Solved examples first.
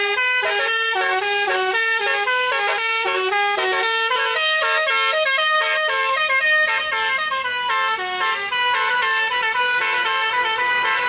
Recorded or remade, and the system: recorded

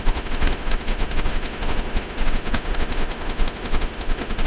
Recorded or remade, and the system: remade, autoencoder, DAC-VAE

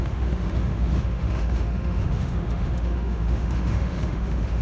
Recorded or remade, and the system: remade, autoencoder, DAC-VAE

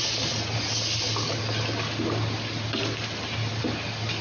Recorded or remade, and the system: recorded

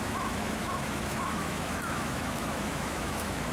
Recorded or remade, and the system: remade, autoencoder, DAC-VAE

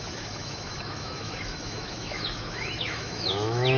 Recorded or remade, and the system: remade, autoencoder, DAC-VAE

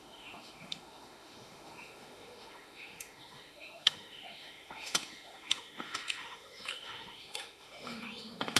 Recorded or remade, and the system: remade, autoencoder, DAC-VAE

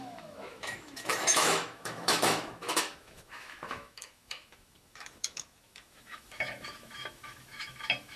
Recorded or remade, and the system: remade, autoencoder, DAC-VAE